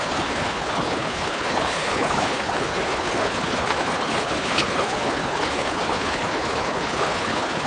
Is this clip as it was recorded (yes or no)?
no